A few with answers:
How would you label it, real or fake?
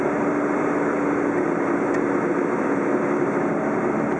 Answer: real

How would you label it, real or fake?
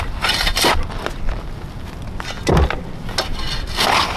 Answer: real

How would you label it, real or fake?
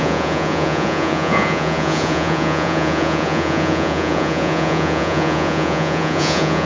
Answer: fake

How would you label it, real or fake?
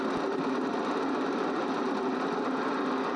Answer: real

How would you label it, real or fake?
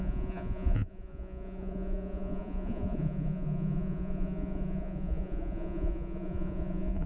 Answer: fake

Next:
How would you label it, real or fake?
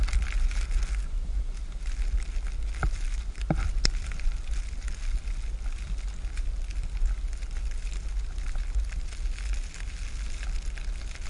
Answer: real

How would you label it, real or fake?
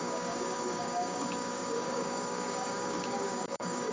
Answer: fake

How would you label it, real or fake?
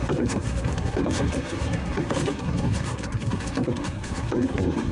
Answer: fake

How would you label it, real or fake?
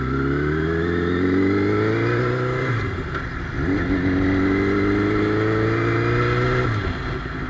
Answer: real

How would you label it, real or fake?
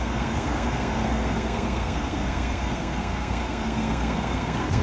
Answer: fake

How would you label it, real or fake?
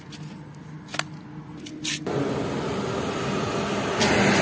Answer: real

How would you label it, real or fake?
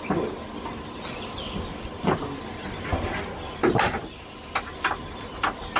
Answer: real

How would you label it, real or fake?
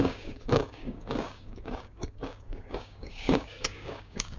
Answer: fake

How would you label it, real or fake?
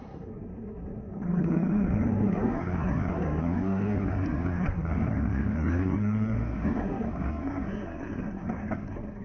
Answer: fake